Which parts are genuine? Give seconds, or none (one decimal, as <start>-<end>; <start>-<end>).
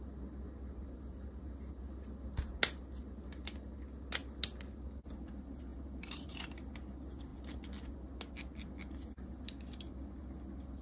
0.0-5.7; 6.4-10.8